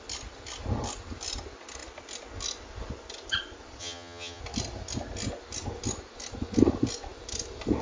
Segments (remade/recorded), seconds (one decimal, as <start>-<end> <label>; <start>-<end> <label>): 0.0-3.8 recorded; 3.8-4.4 remade; 4.4-7.8 recorded